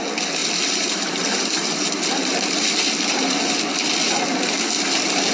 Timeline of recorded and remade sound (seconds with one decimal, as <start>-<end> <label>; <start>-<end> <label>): 0.0-0.4 recorded; 0.4-3.6 remade; 3.6-5.3 recorded